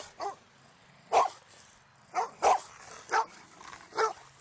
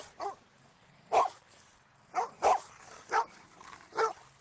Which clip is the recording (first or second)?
first